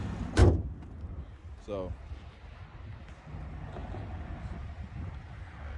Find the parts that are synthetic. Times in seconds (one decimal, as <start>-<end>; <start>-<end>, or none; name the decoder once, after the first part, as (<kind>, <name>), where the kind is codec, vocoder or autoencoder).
none